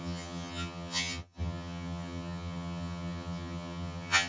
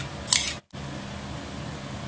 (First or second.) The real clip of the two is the second